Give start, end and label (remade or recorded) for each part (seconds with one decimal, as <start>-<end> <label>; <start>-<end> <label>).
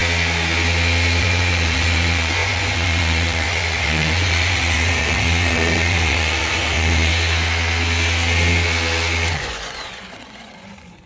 0.0-1.2 recorded; 1.2-7.1 remade; 7.1-9.3 recorded; 9.3-11.1 remade